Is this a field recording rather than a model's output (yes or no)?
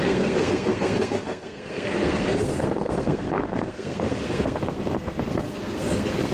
no